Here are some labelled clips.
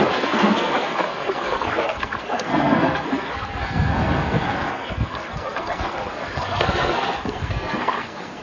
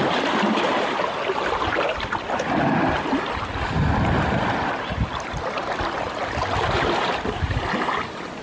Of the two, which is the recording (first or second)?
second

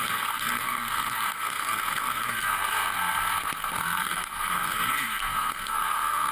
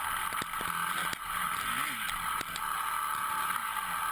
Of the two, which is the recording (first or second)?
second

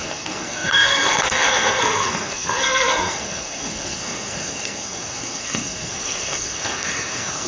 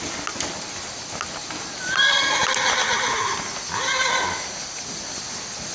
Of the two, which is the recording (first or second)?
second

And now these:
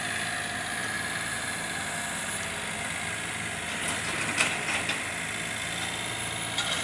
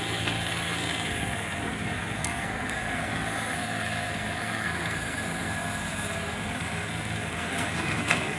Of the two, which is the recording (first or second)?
first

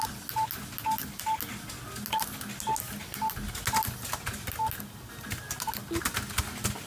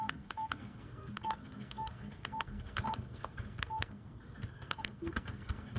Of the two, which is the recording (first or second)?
first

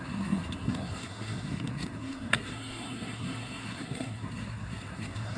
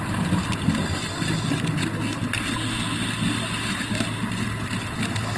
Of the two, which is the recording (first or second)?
second